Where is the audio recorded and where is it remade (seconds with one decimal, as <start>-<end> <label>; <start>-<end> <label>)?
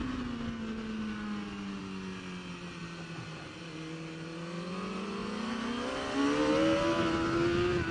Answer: 0.0-7.9 recorded